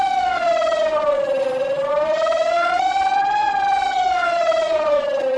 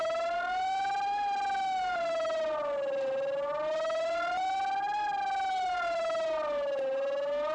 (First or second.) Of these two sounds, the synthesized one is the first